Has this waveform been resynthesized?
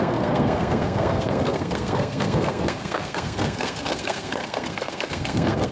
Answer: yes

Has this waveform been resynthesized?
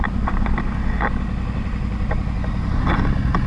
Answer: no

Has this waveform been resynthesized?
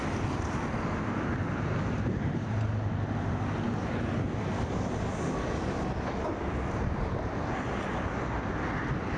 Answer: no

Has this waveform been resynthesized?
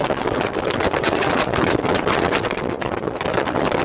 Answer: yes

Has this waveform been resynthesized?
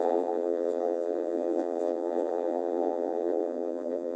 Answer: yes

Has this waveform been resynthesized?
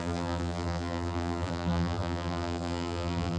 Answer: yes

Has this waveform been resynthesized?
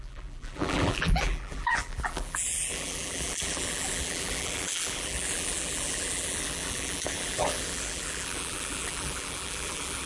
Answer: yes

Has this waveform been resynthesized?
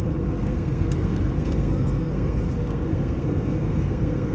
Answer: yes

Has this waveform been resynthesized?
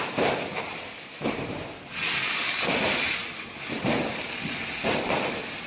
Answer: no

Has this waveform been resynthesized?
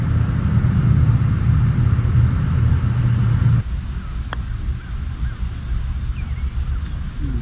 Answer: no